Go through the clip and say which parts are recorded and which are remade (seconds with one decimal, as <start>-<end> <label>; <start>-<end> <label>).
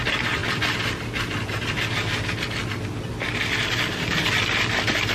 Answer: 0.0-0.4 remade; 0.4-3.5 recorded; 3.5-5.1 remade